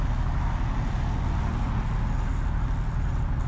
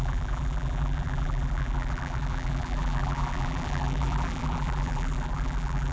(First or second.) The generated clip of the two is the second